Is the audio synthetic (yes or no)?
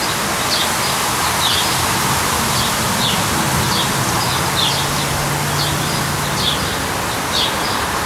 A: no